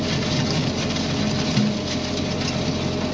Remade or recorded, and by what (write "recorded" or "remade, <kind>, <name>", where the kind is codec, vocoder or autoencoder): recorded